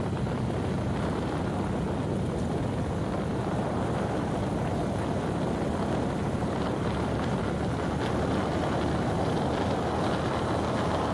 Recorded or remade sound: recorded